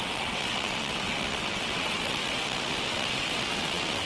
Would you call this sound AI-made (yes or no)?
yes